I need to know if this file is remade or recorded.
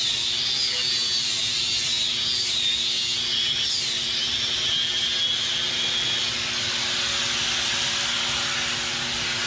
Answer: recorded